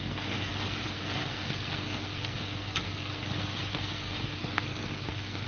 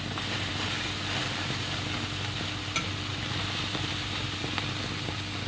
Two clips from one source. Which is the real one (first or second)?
second